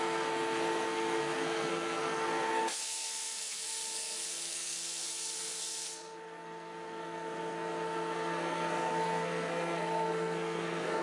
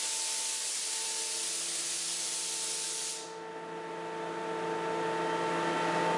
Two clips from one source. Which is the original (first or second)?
second